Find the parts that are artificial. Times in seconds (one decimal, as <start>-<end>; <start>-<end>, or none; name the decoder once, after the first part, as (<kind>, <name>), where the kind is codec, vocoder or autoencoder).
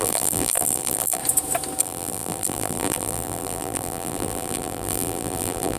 0.0-1.2 (vocoder, BigVGAN v2); 1.8-5.8